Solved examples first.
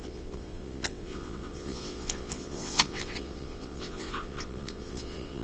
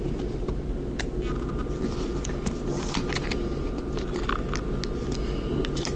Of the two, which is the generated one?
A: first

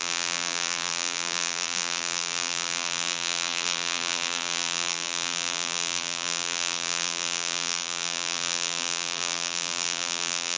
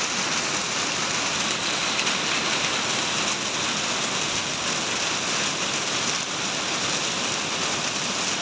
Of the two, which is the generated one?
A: first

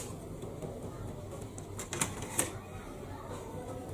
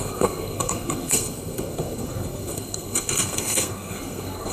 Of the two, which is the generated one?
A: second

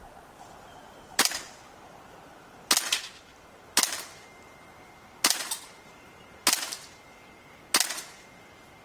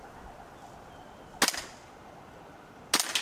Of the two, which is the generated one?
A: first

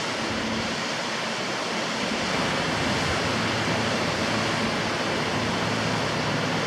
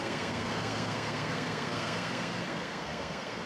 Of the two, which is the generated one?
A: second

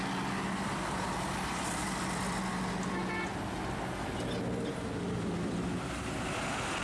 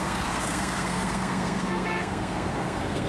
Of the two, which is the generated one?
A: second